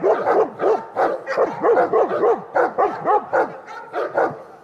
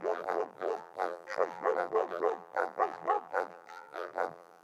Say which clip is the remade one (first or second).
second